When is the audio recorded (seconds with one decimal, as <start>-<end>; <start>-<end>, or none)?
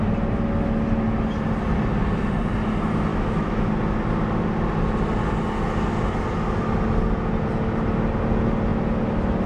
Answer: 0.0-3.1; 3.7-9.5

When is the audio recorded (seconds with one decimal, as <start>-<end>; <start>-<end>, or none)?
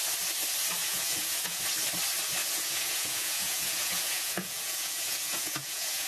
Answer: 0.0-0.8; 1.6-2.4